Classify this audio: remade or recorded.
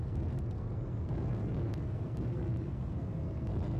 remade